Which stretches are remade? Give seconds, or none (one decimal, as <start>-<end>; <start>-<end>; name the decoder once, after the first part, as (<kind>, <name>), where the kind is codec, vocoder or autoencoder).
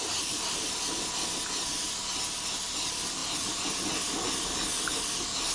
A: none